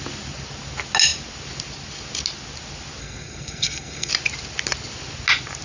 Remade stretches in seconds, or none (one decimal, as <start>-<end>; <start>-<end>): 3.0-4.1